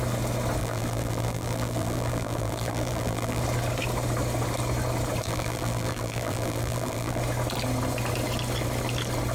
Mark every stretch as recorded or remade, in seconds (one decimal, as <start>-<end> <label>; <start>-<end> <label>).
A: 0.0-0.6 recorded; 0.6-3.4 remade; 3.4-5.2 recorded; 5.2-7.2 remade; 7.2-9.3 recorded